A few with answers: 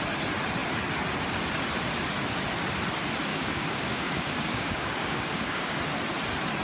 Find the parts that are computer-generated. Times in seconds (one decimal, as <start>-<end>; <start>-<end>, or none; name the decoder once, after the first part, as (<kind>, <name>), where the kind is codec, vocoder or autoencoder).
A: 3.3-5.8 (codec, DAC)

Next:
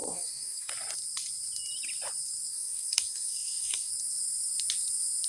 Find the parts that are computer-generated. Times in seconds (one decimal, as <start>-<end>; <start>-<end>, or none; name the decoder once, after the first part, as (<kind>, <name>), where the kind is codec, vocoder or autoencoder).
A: 0.0-0.7 (codec, DAC); 2.5-3.9

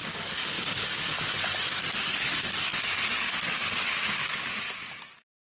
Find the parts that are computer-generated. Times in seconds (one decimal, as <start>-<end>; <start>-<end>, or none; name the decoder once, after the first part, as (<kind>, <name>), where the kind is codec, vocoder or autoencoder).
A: 0.0-5.4 (codec, DAC)